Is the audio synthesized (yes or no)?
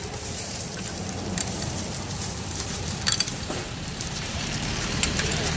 yes